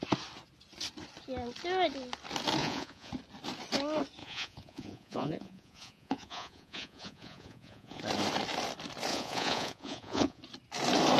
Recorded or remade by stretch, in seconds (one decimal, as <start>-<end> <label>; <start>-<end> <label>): 0.0-2.6 recorded; 2.6-3.1 remade; 3.1-4.2 recorded; 4.2-8.0 remade; 8.0-9.1 recorded; 9.1-10.4 remade; 10.4-11.2 recorded